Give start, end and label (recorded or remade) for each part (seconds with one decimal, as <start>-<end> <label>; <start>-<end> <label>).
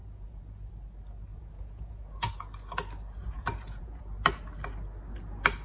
0.0-0.7 remade; 0.7-1.3 recorded; 1.3-2.3 remade; 2.3-3.2 recorded; 3.2-4.0 remade; 4.0-5.6 recorded